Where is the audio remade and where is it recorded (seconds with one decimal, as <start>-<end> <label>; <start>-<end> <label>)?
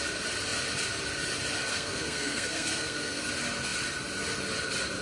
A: 0.0-1.7 recorded; 1.7-3.3 remade; 3.3-5.0 recorded